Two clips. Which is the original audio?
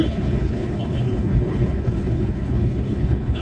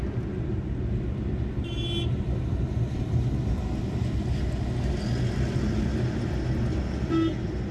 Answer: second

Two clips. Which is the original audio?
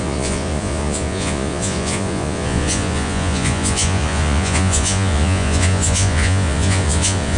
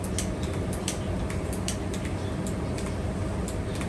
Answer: second